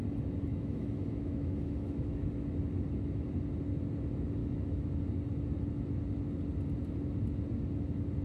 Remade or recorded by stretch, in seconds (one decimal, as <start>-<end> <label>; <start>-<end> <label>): 0.0-0.5 recorded; 0.5-2.3 remade; 2.3-4.4 recorded; 4.4-5.0 remade; 5.0-8.2 recorded